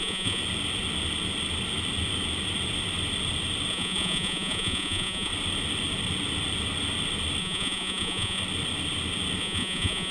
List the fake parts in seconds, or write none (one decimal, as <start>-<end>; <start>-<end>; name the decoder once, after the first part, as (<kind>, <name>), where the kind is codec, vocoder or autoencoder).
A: 0.0-0.4 (vocoder, Vocos); 3.7-5.3; 7.4-8.4; 9.4-10.1